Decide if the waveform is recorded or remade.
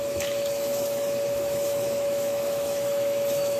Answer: remade